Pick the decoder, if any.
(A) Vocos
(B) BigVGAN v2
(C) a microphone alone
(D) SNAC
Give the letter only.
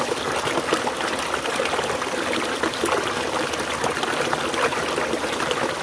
C